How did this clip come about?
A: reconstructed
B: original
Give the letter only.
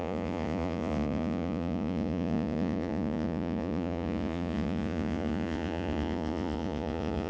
A